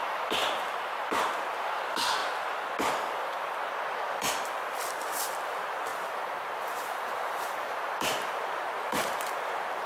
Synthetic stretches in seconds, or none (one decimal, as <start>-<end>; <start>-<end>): 0.0-0.4; 1.6-2.2; 5.4-9.9